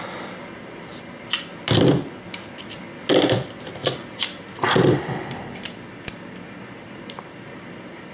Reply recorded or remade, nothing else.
recorded